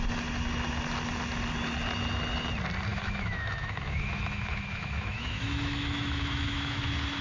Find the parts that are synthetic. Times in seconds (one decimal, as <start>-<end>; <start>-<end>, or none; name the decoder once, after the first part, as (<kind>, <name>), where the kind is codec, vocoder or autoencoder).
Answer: 2.9-6.8 (autoencoder, DAC-VAE)